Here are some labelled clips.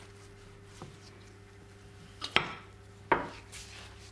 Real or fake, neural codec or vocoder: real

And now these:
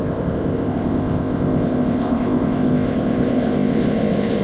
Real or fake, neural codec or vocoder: fake, codec, ZipCodec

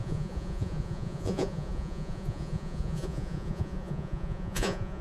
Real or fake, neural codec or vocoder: fake, vocoder, Vocos